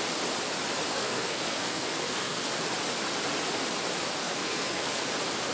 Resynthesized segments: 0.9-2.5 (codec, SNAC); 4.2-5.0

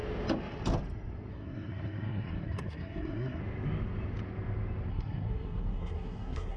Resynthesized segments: 1.3-3.4 (codec, SNAC); 4.9-6.6

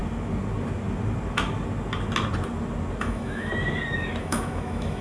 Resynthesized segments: 3.0-3.5 (autoencoder, DAC-VAE); 4.2-5.0

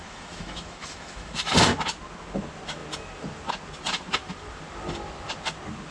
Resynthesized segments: 0.0-1.5 (autoencoder, DAC-VAE)

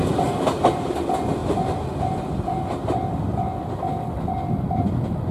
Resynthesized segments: none